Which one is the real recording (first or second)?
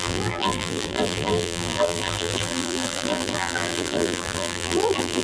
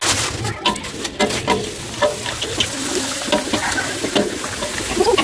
second